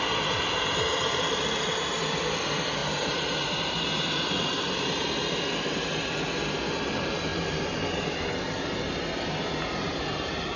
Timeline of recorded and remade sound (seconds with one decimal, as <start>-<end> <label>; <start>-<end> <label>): 0.0-2.8 recorded; 2.8-5.1 remade; 5.1-10.6 recorded